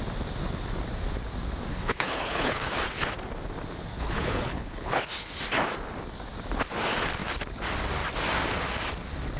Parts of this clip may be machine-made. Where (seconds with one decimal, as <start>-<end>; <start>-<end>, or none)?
1.7-2.7; 3.9-5.4